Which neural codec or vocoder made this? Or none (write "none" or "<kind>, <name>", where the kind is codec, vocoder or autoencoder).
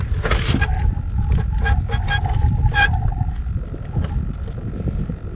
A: none